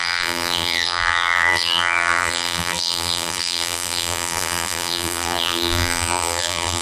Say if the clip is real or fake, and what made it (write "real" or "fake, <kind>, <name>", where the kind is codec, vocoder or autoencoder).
fake, vocoder, BigVGAN v2